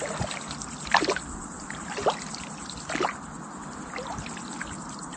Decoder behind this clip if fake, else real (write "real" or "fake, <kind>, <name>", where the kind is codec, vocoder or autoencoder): real